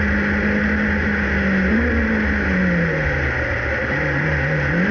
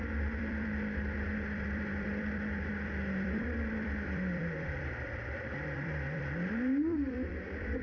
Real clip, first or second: first